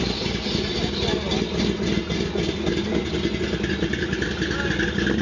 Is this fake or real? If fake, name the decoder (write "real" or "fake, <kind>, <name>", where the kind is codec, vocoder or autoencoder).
real